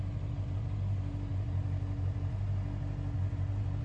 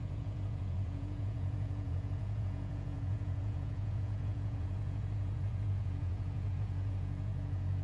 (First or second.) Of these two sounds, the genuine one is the first